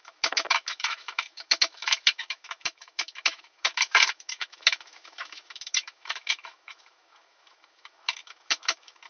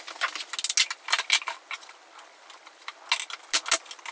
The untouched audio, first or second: second